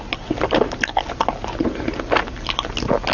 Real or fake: real